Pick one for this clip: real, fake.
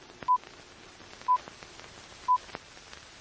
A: real